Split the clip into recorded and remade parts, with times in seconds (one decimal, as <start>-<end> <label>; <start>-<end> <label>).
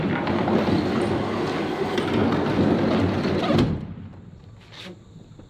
0.0-2.2 remade; 2.2-3.4 recorded; 3.4-5.5 remade